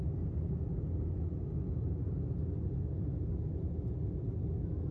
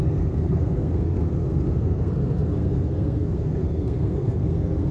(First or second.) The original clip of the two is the first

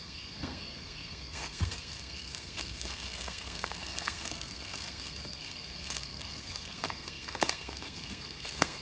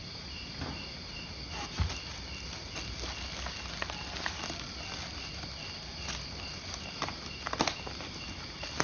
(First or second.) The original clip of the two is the second